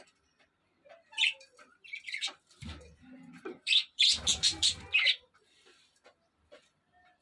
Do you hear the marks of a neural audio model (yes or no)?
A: yes